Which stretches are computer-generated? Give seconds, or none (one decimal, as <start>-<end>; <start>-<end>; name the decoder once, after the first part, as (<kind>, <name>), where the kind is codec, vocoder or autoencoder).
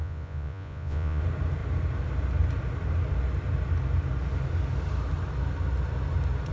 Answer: 0.0-1.2 (vocoder, Vocos)